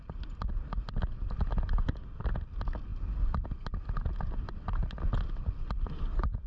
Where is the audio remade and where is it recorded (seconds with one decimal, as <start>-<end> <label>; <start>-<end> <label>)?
0.0-6.5 recorded